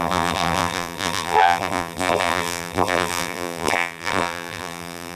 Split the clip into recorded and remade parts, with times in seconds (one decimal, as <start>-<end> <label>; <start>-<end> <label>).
0.0-5.2 remade